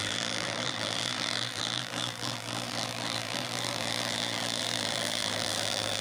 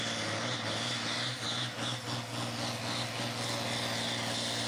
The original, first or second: second